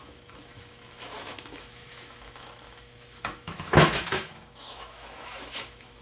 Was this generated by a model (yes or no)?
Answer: yes